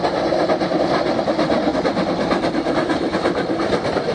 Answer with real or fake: real